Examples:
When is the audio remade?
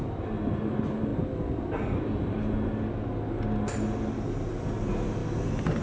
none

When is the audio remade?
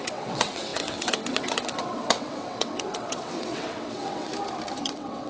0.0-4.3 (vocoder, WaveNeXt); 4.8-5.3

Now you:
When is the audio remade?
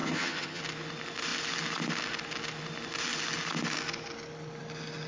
0.0-0.6 (vocoder, HiFi-GAN)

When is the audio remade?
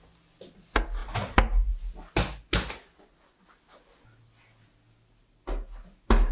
none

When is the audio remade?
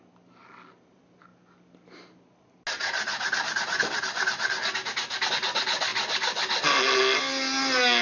none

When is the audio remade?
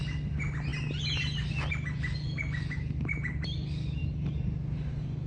none